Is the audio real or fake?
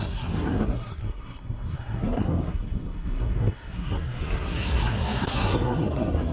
fake